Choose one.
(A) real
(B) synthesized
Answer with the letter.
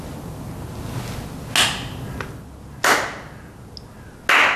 A